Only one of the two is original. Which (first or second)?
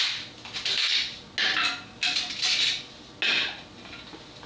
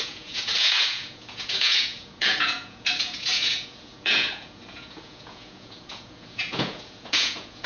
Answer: first